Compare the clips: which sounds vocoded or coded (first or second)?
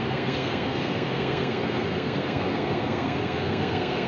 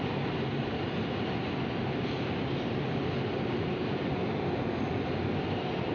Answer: first